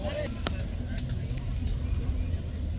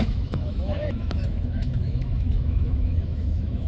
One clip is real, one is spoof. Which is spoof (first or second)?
second